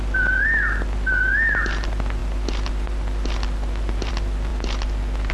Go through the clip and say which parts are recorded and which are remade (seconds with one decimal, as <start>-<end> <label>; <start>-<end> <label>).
0.0-5.3 recorded